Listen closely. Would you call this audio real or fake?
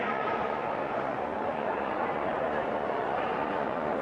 fake